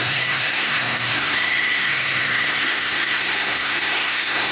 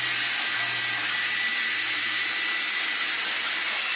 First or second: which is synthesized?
first